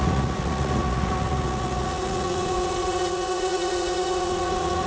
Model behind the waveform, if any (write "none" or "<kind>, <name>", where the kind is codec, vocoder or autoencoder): vocoder, Vocos